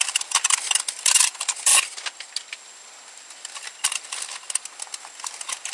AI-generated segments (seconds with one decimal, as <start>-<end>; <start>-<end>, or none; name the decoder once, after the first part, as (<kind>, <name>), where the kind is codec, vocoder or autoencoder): none

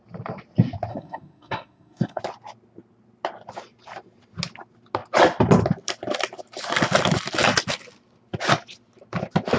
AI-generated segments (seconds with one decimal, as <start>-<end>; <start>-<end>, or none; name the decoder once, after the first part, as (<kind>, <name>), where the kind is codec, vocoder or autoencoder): 0.9-2.2 (codec, SNAC)

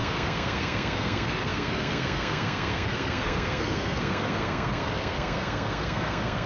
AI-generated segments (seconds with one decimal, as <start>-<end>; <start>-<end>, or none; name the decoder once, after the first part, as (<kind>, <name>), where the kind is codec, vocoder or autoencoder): 0.0-6.5 (codec, SNAC)